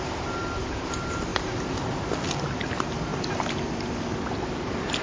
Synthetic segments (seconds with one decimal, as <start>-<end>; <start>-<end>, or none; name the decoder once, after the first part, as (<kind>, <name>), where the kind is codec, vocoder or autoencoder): none